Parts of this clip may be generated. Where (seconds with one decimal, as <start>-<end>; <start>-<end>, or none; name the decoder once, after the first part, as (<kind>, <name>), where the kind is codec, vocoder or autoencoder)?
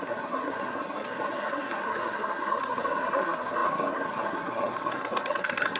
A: 0.0-5.8 (codec, SNAC)